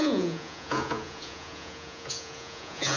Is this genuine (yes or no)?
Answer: no